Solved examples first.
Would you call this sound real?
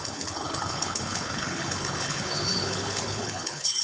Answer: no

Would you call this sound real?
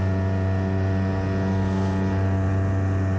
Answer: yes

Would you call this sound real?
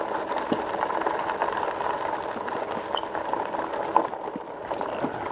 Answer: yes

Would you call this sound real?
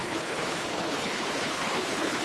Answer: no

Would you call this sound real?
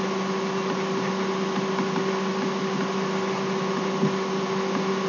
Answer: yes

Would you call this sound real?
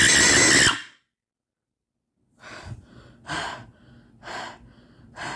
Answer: yes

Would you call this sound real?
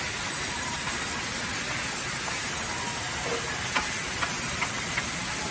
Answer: yes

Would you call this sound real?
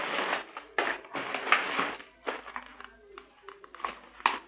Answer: yes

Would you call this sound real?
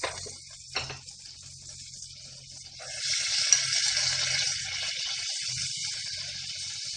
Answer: yes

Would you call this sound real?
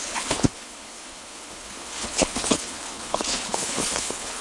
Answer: no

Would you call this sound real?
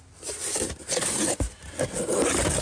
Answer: yes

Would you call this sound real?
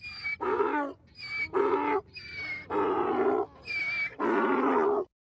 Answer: yes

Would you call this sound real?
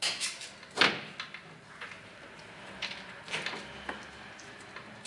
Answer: yes